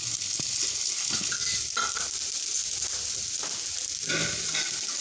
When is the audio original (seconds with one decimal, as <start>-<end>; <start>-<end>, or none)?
1.3-5.0